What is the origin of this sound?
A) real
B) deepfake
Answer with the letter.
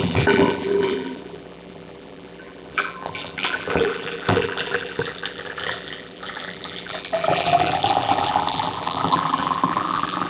B